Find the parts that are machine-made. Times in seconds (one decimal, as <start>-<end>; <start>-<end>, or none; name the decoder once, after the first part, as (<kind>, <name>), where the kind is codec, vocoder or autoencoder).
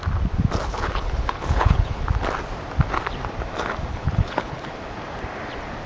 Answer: 0.7-2.0 (codec, HILCodec); 3.9-4.7